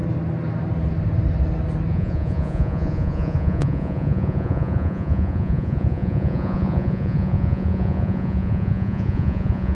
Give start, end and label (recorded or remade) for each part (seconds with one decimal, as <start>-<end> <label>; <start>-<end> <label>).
0.0-1.9 recorded; 1.9-9.7 remade